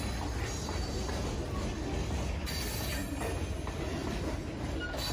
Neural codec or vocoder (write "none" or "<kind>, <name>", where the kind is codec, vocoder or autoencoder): none